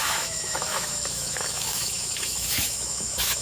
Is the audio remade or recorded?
remade